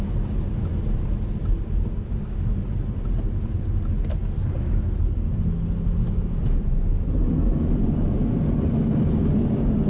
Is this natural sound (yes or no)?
yes